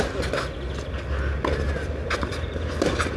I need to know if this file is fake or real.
real